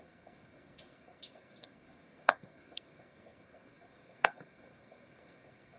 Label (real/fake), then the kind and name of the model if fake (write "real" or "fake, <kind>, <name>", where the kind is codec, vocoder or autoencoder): fake, codec, SNAC